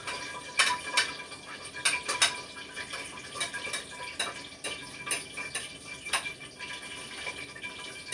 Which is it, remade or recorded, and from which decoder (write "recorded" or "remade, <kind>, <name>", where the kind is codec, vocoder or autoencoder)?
recorded